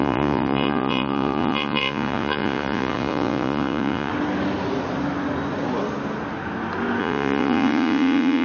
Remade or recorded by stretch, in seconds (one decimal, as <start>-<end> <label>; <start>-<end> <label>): 0.0-4.1 remade; 4.1-7.0 recorded; 7.0-8.4 remade